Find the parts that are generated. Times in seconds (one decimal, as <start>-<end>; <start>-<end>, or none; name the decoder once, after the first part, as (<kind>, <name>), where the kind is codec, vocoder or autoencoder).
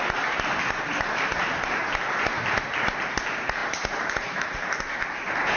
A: none